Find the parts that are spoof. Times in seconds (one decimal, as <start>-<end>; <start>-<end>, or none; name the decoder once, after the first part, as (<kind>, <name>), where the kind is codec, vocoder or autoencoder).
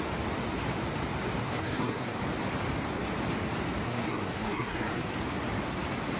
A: 1.4-2.2 (codec, SNAC); 3.8-5.1